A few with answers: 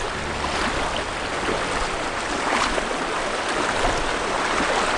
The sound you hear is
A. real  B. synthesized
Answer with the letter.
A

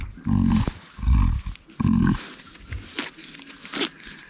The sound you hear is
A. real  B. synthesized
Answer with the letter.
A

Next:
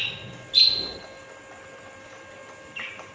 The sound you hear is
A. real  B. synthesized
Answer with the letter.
A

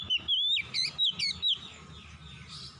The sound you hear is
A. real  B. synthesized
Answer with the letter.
A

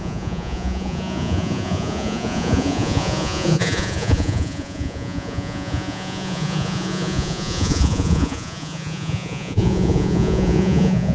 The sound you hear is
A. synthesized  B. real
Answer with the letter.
A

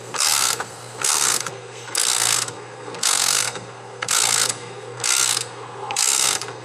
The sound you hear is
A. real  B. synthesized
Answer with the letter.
B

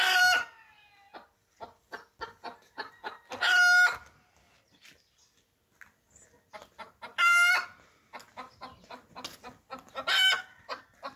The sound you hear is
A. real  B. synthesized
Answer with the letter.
A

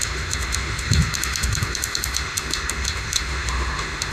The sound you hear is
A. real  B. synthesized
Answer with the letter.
B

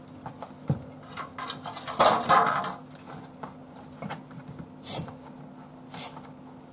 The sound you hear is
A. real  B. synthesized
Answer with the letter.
A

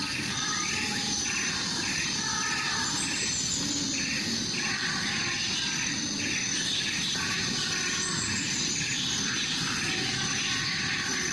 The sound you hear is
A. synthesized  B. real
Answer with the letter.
B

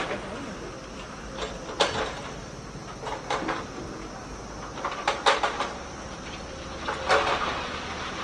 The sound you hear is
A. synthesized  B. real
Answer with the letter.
B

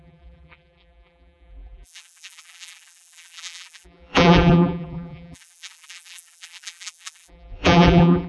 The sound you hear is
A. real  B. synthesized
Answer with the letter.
B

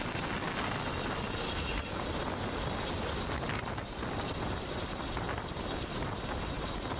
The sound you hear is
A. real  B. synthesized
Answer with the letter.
A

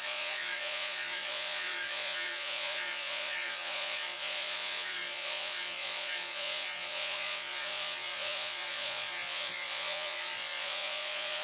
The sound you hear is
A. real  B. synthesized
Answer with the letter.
B